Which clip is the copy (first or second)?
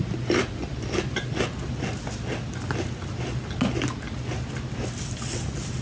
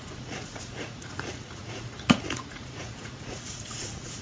second